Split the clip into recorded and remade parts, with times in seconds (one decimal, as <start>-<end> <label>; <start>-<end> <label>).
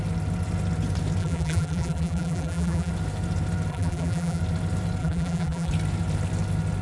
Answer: 0.0-1.2 recorded; 1.2-2.9 remade; 2.9-3.7 recorded; 3.7-4.4 remade; 4.4-5.0 recorded; 5.0-5.7 remade; 5.7-6.8 recorded